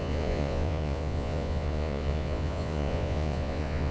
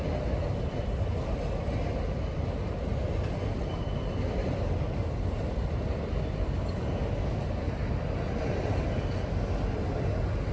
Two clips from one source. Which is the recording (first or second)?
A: second